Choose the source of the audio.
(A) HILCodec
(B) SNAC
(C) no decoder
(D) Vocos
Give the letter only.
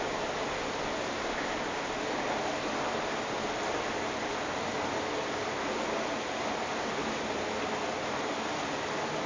C